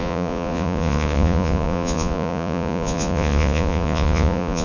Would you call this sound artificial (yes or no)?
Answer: yes